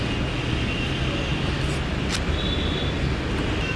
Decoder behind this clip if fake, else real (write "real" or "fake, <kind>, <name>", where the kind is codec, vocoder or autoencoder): real